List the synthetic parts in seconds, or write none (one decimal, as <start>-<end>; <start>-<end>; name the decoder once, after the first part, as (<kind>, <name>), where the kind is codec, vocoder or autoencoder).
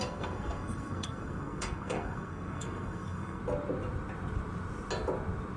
0.0-3.4 (codec, SNAC)